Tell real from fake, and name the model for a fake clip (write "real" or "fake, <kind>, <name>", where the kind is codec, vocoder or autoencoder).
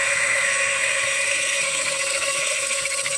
fake, codec, SNAC